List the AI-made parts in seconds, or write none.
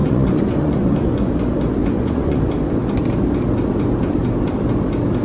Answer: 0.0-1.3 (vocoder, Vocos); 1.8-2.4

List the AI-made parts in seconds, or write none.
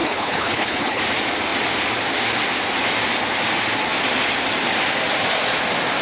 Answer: 0.0-1.0 (codec, HILCodec)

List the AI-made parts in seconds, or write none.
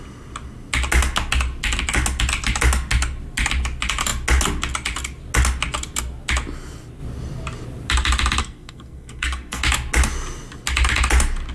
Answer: 8.4-9.6 (codec, SNAC)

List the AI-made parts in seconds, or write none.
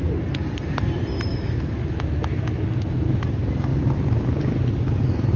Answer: 1.3-3.2 (autoencoder, DAC-VAE)